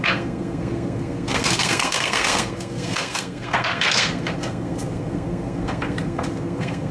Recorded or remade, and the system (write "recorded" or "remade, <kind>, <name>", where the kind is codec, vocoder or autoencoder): remade, codec, SNAC